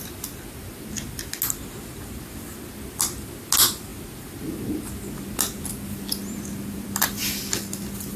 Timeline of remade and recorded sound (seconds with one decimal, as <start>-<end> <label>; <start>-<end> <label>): 0.0-8.2 recorded